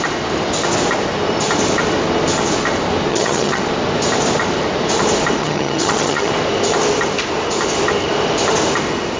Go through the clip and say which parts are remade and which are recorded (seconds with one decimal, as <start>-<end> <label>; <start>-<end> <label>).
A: 0.0-3.1 recorded; 3.1-3.6 remade; 3.6-5.4 recorded; 5.4-6.3 remade; 6.3-9.2 recorded